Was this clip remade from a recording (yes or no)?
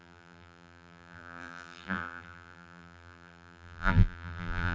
yes